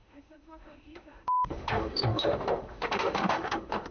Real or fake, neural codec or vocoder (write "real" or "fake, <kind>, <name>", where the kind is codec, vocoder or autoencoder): fake, autoencoder, DAC-VAE